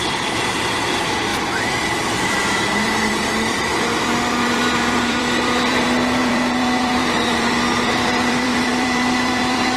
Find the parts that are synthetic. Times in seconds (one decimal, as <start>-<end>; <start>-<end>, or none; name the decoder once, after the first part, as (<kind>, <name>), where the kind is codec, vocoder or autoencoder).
0.0-9.8 (vocoder, BigVGAN v2)